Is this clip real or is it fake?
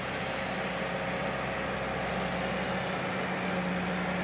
real